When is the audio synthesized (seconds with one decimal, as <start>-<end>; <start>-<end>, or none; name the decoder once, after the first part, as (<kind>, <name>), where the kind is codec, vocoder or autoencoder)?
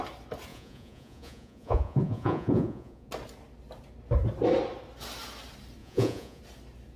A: 0.5-3.1 (vocoder, Vocos); 5.8-6.4